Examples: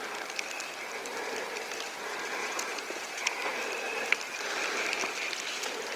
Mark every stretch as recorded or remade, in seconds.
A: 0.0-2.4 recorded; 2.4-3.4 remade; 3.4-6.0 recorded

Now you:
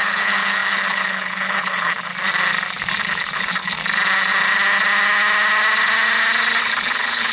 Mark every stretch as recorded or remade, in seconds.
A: 0.0-2.1 remade; 2.1-3.0 recorded; 3.0-3.8 remade; 3.8-6.6 recorded; 6.6-7.3 remade

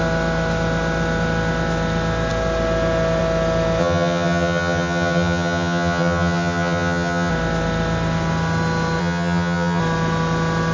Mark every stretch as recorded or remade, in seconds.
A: 0.0-3.8 recorded; 3.8-7.3 remade; 7.3-9.0 recorded; 9.0-9.8 remade; 9.8-10.7 recorded

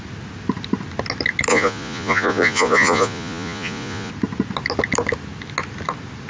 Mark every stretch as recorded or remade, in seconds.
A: 0.0-1.5 recorded; 1.5-4.1 remade; 4.1-6.3 recorded